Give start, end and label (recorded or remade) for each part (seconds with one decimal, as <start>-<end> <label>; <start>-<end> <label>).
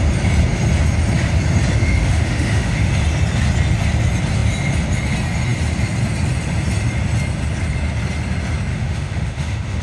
0.0-1.8 recorded; 1.8-2.9 remade; 2.9-8.7 recorded; 8.7-9.8 remade